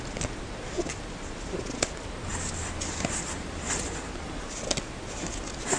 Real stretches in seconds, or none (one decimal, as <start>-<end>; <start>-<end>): 0.0-5.8

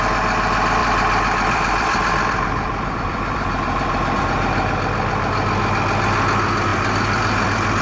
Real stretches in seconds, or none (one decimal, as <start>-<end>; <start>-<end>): 0.0-0.8; 4.2-6.7

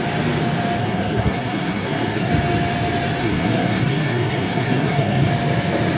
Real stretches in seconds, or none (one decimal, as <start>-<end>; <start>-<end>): 0.0-0.8; 2.3-3.2; 5.3-6.0

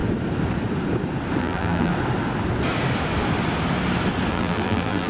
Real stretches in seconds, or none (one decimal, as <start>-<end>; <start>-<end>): 0.0-1.4; 1.9-4.3

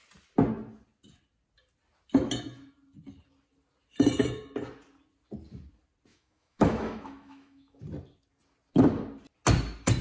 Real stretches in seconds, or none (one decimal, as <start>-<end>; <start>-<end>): 0.0-6.1; 7.8-10.0

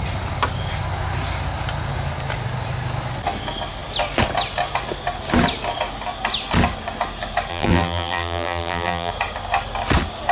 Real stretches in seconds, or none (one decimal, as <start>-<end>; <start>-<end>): 0.0-7.5; 9.1-10.3